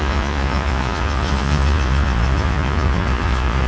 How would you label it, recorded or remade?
remade